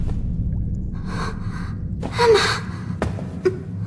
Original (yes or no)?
yes